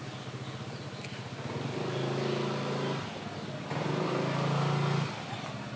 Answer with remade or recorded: recorded